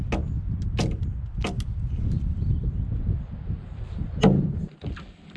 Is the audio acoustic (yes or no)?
yes